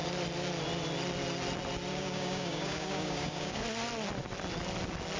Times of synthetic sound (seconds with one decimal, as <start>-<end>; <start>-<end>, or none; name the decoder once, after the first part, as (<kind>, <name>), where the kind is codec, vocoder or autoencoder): 1.9-3.6 (codec, DAC)